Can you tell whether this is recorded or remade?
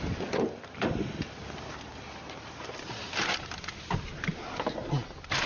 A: recorded